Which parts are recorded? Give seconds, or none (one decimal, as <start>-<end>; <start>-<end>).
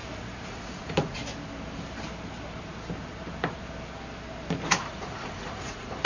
0.0-0.5; 1.2-4.7